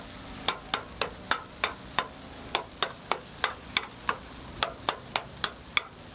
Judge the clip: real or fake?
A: real